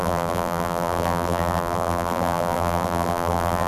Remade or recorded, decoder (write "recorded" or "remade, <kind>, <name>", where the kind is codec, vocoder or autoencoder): remade, vocoder, BigVGAN v2